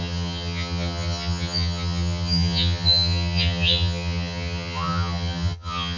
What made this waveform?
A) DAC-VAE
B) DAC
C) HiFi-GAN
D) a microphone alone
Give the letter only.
C